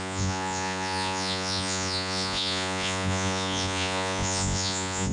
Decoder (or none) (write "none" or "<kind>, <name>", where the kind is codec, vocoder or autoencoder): vocoder, Vocos